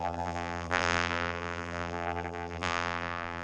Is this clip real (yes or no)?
no